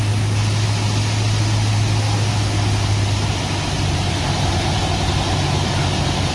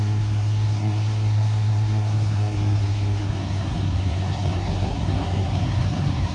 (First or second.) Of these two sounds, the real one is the first